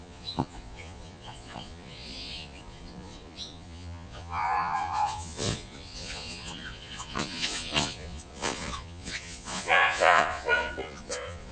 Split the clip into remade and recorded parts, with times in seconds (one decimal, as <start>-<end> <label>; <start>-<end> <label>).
0.0-11.5 remade